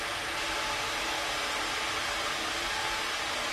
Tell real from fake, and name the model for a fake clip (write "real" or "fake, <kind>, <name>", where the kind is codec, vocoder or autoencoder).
fake, vocoder, BigVGAN v2